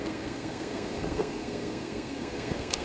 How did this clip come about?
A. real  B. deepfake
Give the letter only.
B